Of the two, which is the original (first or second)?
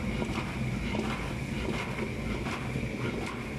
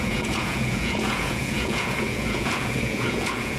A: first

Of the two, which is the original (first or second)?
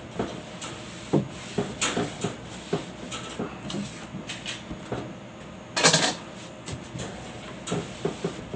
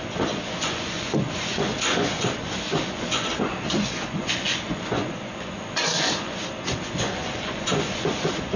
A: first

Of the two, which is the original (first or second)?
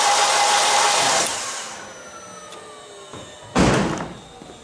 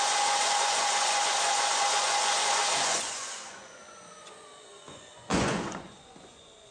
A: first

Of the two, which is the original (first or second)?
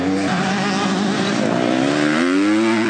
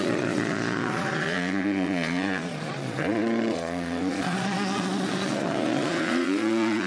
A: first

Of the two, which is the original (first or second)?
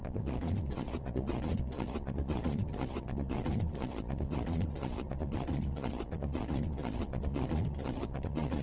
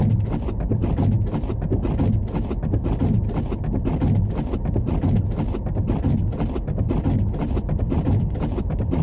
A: second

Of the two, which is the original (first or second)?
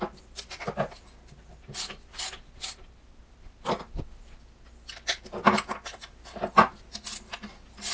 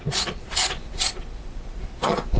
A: first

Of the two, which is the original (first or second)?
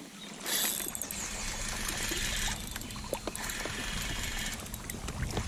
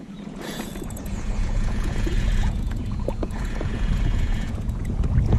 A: first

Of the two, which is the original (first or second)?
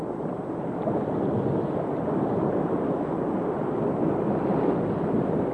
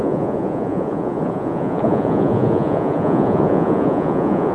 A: first